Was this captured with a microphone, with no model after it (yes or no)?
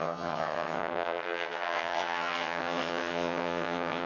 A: no